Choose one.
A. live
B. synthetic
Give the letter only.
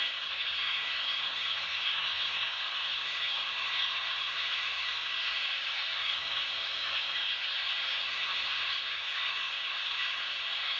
B